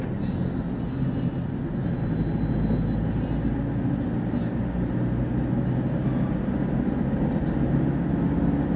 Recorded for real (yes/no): yes